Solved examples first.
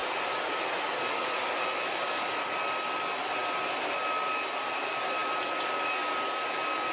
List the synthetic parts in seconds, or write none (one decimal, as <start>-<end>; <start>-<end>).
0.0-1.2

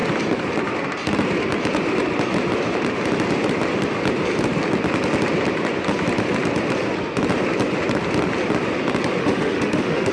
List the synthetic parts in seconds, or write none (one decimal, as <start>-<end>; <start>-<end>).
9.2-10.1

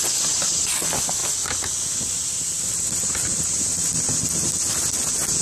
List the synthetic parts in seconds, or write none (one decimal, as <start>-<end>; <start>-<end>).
none